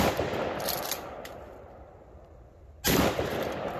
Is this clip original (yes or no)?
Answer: yes